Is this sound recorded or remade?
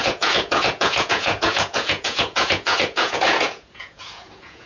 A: remade